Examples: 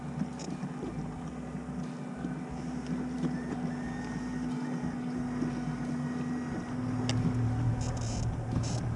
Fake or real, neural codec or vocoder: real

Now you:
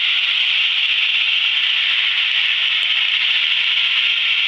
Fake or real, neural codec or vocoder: real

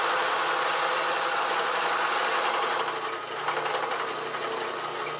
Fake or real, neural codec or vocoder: real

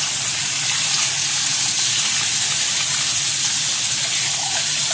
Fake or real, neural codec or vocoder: real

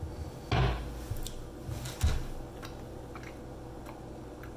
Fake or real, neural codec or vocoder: real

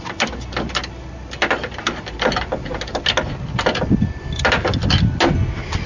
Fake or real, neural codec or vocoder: real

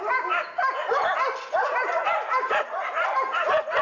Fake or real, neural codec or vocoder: real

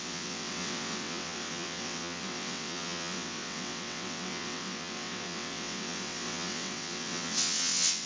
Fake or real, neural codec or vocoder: fake, vocoder, WaveNeXt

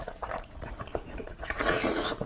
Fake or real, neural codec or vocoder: fake, vocoder, Vocos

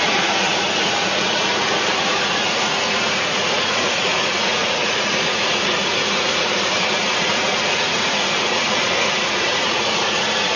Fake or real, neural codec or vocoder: fake, vocoder, Vocos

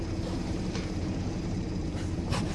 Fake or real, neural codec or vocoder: fake, vocoder, BigVGAN v2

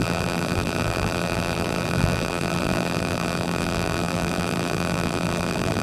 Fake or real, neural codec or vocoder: fake, vocoder, BigVGAN v2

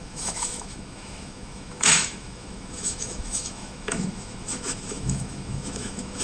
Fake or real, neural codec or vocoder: fake, autoencoder, DAC-VAE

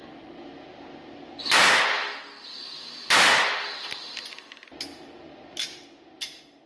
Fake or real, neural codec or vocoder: real